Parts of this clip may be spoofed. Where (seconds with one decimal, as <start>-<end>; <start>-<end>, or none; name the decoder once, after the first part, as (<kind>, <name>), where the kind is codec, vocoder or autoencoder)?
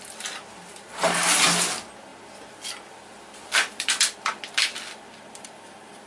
none